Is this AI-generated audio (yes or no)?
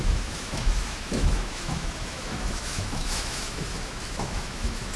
yes